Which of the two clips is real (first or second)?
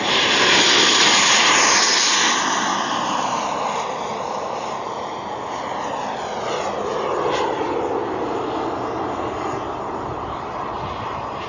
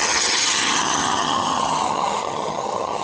first